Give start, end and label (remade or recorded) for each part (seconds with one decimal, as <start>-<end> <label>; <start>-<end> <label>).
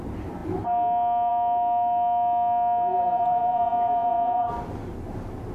0.0-2.9 recorded; 2.9-4.5 remade; 4.5-5.5 recorded